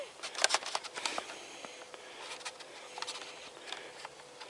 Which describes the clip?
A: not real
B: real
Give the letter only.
B